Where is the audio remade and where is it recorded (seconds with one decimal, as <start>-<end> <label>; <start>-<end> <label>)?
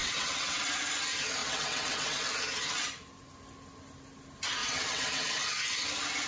0.0-0.6 remade; 0.6-1.4 recorded; 1.4-2.2 remade; 2.2-4.6 recorded; 4.6-5.3 remade; 5.3-6.3 recorded